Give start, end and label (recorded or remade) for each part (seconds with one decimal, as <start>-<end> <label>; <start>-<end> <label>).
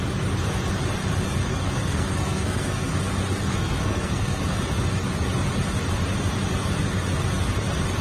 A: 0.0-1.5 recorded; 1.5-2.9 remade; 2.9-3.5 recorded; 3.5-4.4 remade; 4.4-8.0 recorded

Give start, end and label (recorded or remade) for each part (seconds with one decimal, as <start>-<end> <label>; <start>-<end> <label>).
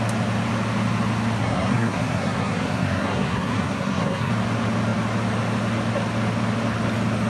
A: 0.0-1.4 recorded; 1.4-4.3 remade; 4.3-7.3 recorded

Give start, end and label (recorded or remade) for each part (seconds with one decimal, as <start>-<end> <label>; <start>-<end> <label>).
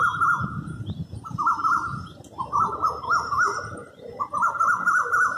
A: 0.0-5.4 recorded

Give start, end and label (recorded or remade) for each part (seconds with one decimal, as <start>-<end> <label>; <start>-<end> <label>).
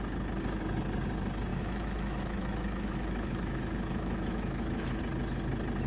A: 0.0-1.5 recorded; 1.5-5.0 remade; 5.0-5.9 recorded